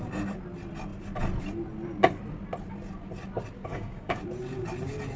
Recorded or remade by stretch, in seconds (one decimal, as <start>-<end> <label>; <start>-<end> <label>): 0.0-3.7 recorded; 3.7-4.2 remade; 4.2-5.2 recorded